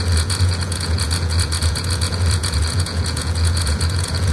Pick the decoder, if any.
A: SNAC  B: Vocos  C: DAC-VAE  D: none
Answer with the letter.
B